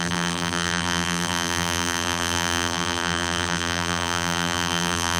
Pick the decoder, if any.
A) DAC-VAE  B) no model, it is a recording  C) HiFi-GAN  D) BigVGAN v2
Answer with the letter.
D